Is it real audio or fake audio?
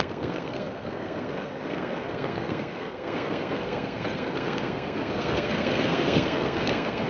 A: fake